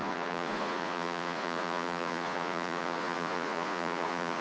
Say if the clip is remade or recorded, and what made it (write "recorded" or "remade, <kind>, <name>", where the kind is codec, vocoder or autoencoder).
remade, vocoder, Vocos